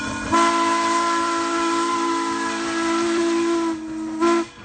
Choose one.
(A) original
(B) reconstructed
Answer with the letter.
A